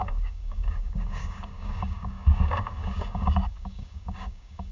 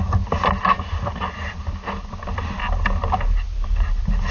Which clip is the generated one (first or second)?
first